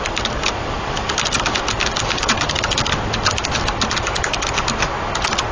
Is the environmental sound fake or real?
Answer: real